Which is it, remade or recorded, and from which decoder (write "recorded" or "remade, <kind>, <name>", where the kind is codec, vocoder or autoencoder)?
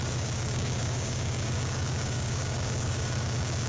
remade, codec, DAC